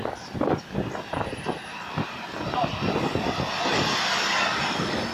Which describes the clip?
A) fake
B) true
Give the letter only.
B